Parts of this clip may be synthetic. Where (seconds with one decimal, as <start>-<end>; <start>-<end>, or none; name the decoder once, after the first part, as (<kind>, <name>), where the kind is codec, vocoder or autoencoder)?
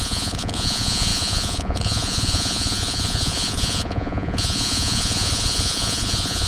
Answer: 0.0-6.5 (vocoder, Vocos)